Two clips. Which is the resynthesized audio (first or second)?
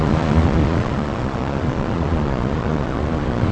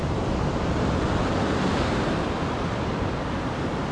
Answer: first